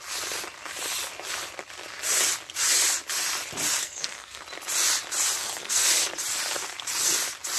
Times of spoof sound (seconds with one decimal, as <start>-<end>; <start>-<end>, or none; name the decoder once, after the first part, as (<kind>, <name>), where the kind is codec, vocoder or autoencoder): 3.8-4.4 (codec, SNAC); 5.4-5.9